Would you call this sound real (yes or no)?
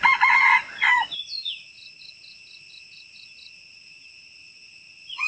no